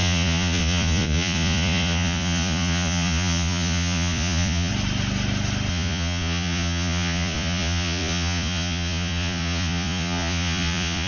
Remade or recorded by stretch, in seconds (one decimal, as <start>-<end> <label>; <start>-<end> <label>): 0.0-4.7 remade; 4.7-5.7 recorded; 5.7-11.1 remade